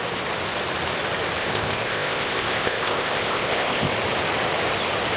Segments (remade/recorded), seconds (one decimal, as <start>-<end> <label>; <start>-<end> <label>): 0.0-1.4 recorded; 1.4-3.9 remade; 3.9-5.2 recorded